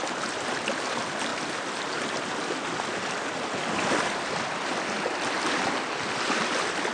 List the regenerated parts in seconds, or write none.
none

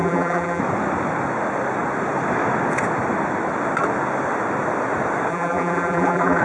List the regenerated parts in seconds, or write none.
0.0-0.6 (vocoder, BigVGAN v2); 5.3-6.4

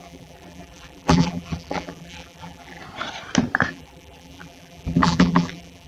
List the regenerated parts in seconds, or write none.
0.0-2.8 (vocoder, BigVGAN v2); 3.7-5.9

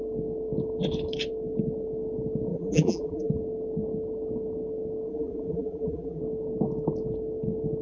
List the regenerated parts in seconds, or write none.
2.5-3.3 (vocoder, BigVGAN v2); 5.1-6.2